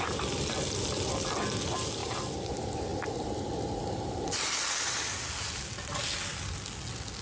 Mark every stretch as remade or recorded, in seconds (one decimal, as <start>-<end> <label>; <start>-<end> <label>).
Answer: 0.0-2.0 recorded; 2.0-2.5 remade; 2.5-2.9 recorded; 2.9-5.1 remade; 5.1-7.2 recorded